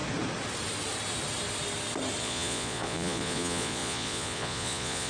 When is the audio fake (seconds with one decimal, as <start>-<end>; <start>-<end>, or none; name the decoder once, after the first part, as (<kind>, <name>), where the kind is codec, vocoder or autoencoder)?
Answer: 2.2-5.1 (vocoder, Vocos)